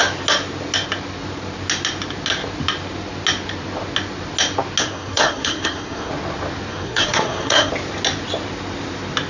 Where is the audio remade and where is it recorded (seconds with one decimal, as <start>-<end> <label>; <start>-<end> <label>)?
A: 0.0-4.8 recorded; 4.8-6.1 remade; 6.1-6.7 recorded; 6.7-7.7 remade; 7.7-9.3 recorded

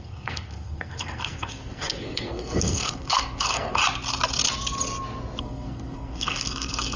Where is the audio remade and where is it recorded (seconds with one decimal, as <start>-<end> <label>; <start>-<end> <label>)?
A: 0.0-3.8 remade; 3.8-5.4 recorded; 5.4-7.0 remade

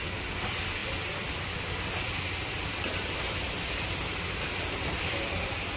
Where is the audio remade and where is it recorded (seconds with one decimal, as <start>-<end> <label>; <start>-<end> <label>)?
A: 0.0-5.8 recorded

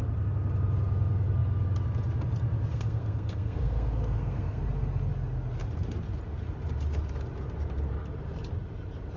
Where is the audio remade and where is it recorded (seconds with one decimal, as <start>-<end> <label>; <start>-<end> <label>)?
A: 0.0-2.7 recorded; 2.7-4.6 remade; 4.6-9.2 recorded

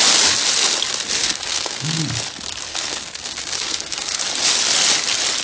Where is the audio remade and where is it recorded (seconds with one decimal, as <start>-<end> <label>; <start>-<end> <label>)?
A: 0.0-1.2 recorded; 1.2-2.0 remade; 2.0-2.7 recorded; 2.7-4.2 remade; 4.2-5.4 recorded